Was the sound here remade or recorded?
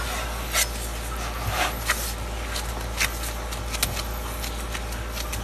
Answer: recorded